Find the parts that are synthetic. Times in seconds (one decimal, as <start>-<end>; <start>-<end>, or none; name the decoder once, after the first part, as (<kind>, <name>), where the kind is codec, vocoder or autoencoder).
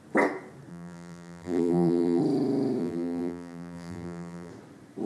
0.7-2.2 (vocoder, BigVGAN v2); 2.8-4.5